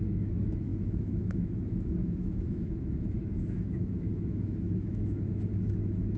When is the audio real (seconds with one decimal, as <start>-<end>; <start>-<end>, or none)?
none